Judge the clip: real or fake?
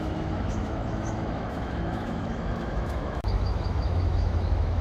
fake